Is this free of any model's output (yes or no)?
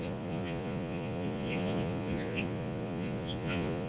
no